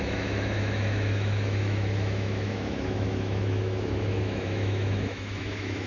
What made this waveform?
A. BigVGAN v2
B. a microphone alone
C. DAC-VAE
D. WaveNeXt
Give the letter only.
C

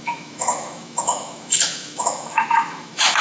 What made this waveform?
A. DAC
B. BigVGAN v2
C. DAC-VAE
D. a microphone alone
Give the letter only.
C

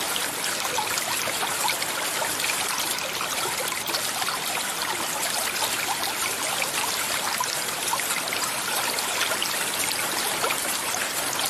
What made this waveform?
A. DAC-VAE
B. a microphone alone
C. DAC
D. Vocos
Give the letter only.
B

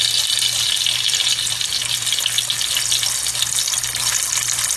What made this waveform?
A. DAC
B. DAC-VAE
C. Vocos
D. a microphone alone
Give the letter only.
D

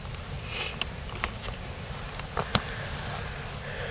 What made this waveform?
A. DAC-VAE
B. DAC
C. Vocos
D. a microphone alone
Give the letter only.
D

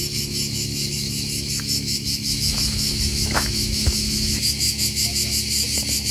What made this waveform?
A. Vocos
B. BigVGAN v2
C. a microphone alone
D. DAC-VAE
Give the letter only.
D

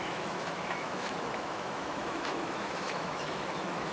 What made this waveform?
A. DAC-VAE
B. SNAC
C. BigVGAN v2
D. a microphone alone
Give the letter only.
A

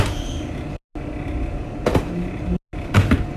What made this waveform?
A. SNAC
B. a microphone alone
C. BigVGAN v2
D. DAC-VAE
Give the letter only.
B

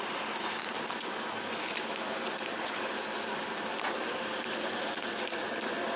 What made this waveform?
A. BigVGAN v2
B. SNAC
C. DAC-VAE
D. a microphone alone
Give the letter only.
D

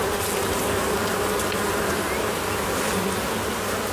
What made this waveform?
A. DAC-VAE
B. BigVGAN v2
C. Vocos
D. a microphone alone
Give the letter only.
D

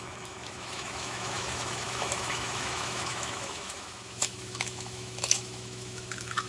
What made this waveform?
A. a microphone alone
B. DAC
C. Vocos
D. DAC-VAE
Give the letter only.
D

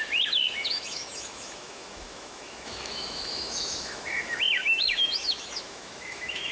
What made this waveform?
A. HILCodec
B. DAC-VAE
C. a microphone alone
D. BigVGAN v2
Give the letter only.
B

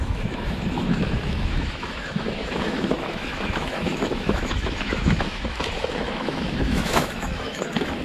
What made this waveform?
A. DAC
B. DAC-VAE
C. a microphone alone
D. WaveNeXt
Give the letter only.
B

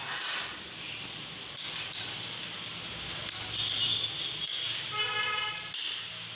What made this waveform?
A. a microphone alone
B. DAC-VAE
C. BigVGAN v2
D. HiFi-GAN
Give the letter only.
A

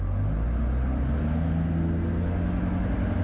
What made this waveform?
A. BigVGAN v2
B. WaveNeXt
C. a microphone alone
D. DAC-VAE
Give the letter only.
C